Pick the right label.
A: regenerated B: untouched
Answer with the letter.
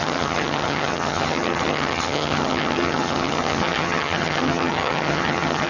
A